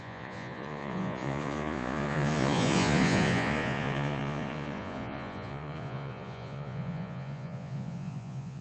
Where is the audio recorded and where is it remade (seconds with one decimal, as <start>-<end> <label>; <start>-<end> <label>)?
0.0-8.6 remade